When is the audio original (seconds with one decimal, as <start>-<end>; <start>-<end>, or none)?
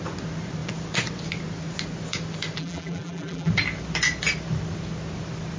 0.0-2.6; 3.5-5.6